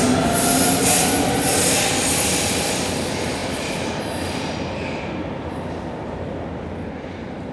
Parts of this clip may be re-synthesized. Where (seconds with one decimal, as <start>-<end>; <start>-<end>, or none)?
none